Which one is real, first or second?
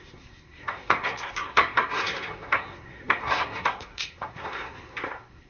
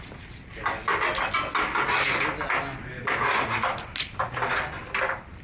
second